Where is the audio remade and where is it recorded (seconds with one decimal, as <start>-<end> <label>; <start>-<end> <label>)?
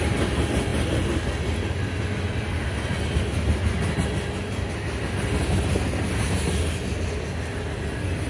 0.0-8.3 recorded